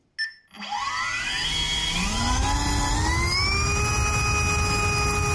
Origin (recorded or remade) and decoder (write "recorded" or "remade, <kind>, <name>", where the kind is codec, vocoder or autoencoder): recorded